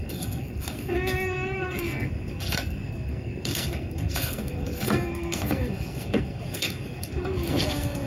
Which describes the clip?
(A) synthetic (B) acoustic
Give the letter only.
A